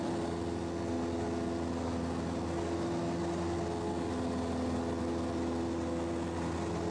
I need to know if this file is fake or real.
real